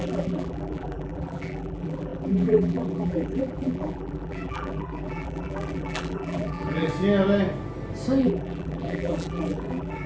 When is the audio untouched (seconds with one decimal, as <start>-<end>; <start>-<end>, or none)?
6.9-8.2